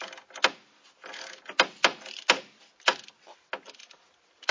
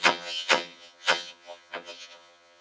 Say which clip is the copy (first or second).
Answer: second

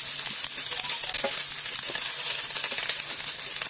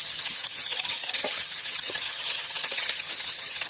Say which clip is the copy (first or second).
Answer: second